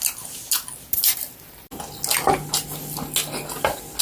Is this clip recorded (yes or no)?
yes